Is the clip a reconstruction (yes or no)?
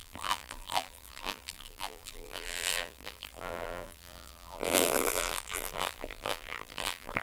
yes